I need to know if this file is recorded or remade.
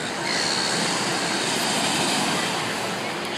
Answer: recorded